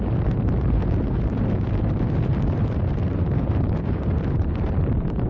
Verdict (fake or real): fake